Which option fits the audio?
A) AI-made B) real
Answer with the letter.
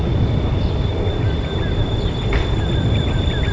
A